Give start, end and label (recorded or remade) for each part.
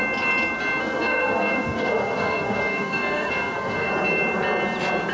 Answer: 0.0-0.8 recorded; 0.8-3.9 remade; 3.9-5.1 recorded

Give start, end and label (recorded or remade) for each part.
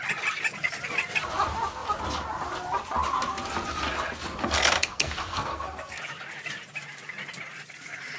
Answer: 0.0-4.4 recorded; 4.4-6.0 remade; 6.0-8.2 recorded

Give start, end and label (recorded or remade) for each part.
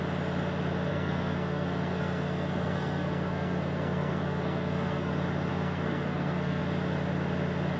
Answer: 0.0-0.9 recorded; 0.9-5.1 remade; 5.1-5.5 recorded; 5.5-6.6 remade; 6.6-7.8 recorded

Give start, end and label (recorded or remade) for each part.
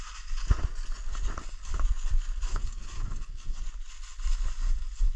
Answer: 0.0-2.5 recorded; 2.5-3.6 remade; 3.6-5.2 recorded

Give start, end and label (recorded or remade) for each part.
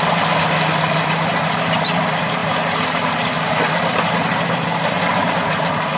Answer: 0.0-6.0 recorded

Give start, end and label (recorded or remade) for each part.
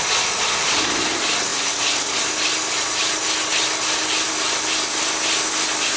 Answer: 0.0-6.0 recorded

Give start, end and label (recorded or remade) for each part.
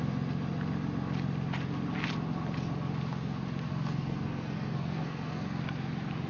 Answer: 0.0-3.7 recorded; 3.7-5.6 remade; 5.6-6.3 recorded